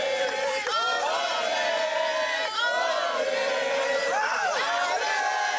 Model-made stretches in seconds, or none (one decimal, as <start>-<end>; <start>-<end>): 0.0-0.7; 1.3-4.0